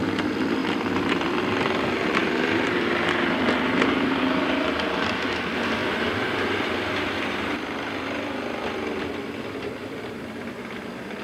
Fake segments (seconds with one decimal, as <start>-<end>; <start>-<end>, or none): 0.0-11.2